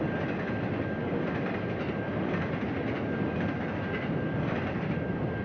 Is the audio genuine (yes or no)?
yes